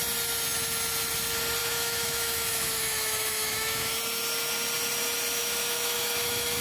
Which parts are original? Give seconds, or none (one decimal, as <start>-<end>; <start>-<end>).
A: 0.0-1.6; 4.0-5.4